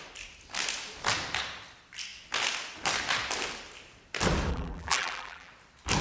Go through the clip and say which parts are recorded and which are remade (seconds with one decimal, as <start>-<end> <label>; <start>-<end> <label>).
0.0-4.5 recorded; 4.5-5.5 remade; 5.5-6.0 recorded